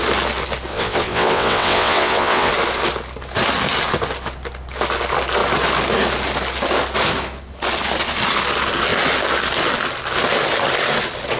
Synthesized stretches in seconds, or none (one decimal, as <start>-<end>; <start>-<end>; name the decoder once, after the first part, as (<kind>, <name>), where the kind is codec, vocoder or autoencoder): 0.7-2.5 (vocoder, WaveNeXt)